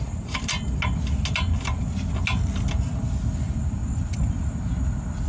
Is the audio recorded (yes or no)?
yes